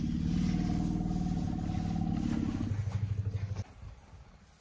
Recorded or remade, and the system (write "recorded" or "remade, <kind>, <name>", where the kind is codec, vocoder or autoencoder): recorded